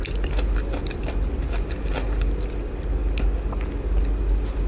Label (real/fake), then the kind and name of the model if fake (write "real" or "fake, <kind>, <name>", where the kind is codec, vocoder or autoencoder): real